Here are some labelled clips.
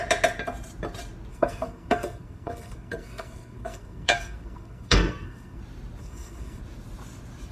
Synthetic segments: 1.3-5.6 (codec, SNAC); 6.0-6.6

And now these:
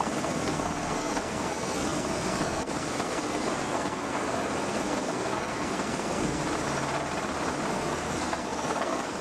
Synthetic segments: 0.0-6.4 (codec, SNAC); 7.7-9.2